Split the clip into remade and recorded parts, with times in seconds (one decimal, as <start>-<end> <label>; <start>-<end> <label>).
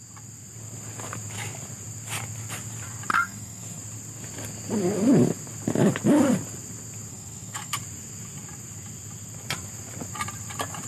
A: 0.0-3.1 recorded; 3.1-3.8 remade; 3.8-7.1 recorded; 7.1-7.8 remade; 7.8-10.9 recorded